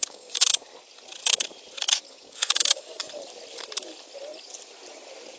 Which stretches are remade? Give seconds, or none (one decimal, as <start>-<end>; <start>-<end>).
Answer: 0.0-0.7; 2.1-3.0